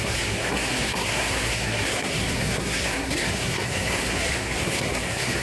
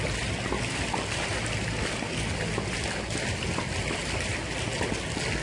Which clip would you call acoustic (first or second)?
second